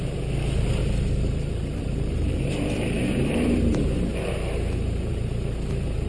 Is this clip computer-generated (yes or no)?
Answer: yes